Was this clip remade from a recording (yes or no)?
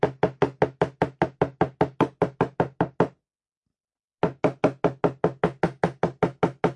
no